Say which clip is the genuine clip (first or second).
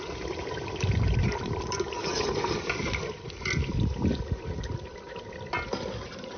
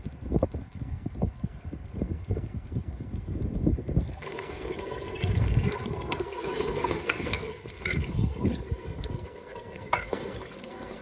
first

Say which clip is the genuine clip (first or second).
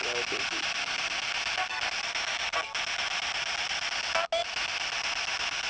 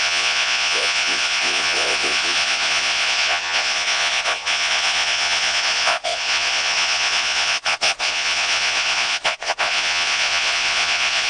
first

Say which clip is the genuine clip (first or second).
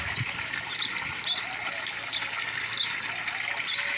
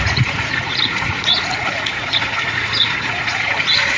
first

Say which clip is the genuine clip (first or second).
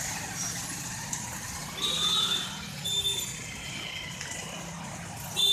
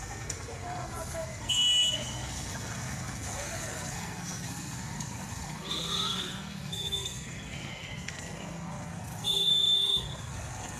first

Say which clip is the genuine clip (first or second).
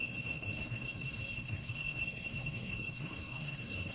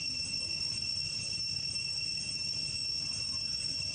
second